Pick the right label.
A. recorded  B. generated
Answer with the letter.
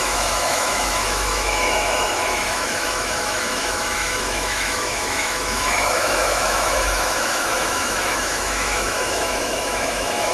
B